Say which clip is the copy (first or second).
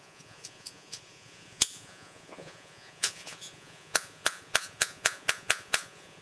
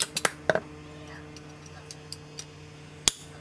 first